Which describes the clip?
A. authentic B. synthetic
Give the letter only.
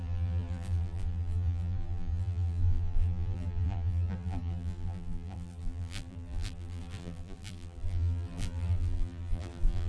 B